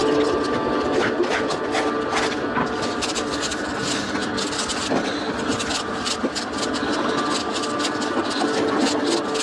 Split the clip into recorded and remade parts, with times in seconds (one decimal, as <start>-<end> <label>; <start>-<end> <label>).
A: 0.0-9.4 recorded